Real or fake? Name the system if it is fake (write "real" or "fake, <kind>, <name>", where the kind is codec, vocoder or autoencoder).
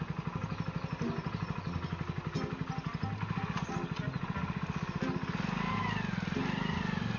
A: real